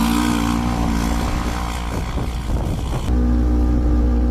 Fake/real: real